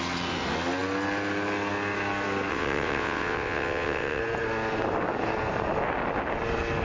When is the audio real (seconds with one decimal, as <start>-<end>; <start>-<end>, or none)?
0.0-2.5; 4.2-6.8